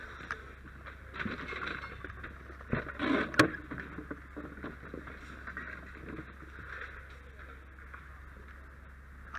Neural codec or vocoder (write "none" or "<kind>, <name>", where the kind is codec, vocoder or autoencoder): none